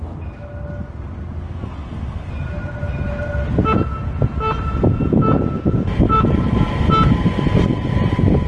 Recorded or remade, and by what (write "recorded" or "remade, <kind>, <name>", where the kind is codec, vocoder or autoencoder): recorded